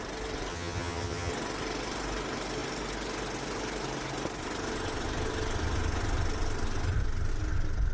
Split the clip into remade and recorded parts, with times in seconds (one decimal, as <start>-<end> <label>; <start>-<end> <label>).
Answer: 0.0-0.5 recorded; 0.5-1.3 remade; 1.3-7.9 recorded